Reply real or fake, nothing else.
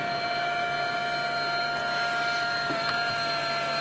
real